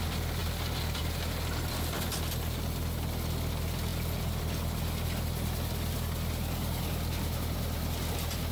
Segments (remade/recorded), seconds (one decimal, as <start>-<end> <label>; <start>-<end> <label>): 0.0-8.5 recorded